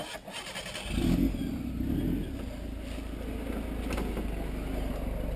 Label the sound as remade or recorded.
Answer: recorded